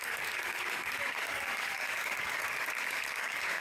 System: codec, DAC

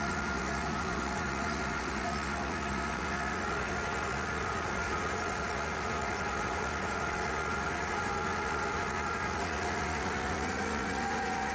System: vocoder, Vocos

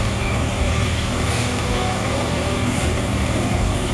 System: codec, DAC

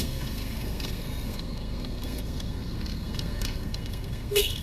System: codec, SNAC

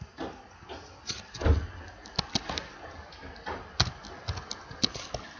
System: none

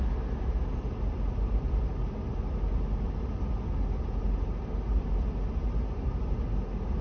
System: none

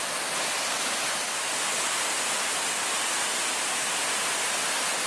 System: none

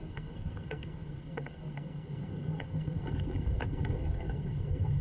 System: codec, SNAC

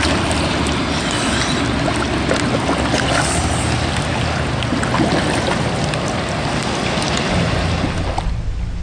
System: none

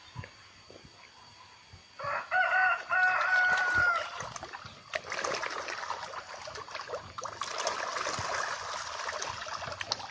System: none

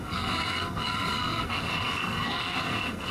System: codec, SNAC